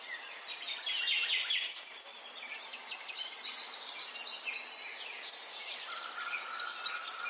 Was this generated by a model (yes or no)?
no